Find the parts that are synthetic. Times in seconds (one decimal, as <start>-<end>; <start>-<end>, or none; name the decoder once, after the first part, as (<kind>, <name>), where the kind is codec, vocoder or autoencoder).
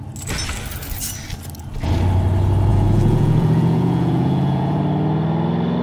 2.7-4.8 (vocoder, Vocos)